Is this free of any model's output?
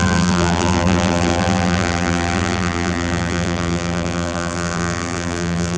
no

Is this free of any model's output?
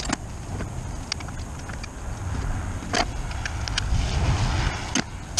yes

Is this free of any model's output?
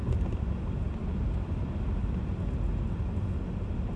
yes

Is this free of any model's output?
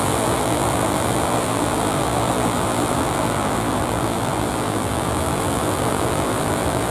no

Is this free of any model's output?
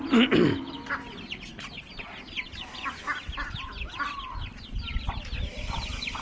yes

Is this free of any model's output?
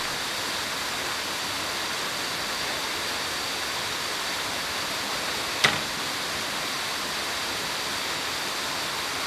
yes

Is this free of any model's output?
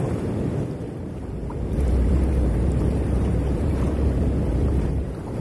no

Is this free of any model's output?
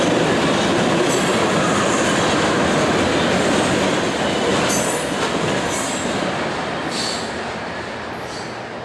yes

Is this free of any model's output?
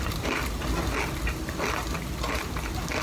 yes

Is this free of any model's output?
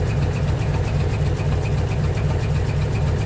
no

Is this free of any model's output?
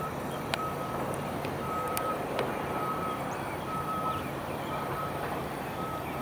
no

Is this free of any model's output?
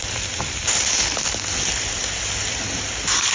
no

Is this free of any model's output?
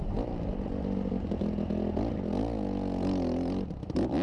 yes